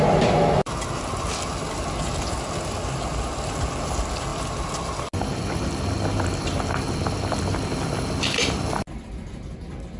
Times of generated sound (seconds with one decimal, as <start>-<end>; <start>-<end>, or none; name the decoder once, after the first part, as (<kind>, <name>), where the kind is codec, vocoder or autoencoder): none